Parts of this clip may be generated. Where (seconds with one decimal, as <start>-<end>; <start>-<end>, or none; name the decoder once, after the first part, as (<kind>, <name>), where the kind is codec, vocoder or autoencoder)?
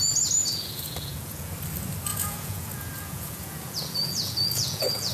0.4-1.5 (vocoder, Vocos); 2.1-5.1